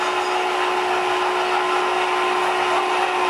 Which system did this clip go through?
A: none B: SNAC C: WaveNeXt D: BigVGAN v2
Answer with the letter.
A